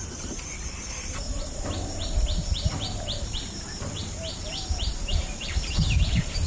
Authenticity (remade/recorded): remade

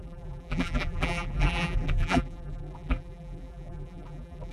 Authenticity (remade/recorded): remade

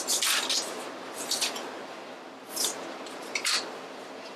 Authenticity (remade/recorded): recorded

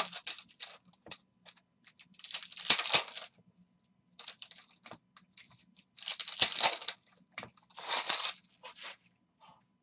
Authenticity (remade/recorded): recorded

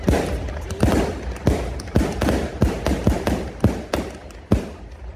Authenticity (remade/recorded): recorded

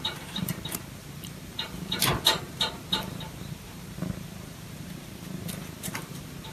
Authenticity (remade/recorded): remade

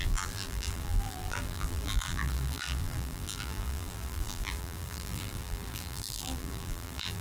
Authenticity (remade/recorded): remade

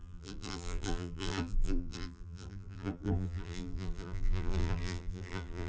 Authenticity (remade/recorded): remade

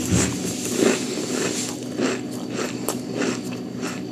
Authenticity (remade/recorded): recorded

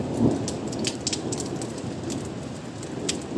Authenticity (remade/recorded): recorded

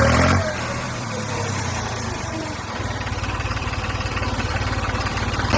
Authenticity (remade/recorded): remade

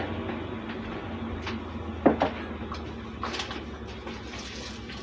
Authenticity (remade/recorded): recorded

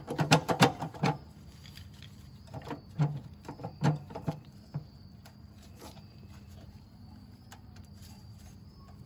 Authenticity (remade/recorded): remade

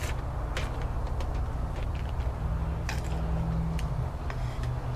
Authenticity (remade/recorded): recorded